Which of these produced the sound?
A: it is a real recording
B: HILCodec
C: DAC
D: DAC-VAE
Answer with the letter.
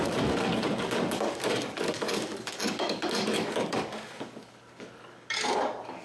C